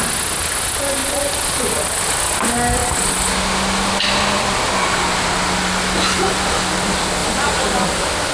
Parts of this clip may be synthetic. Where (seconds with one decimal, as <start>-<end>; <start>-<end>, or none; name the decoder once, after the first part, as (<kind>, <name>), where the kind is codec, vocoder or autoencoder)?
7.2-8.3 (vocoder, BigVGAN v2)